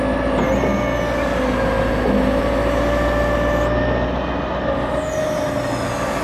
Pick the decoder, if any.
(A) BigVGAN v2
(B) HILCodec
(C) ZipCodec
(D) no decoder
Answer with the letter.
D